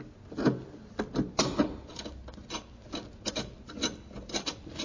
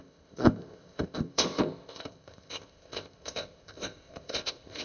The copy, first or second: second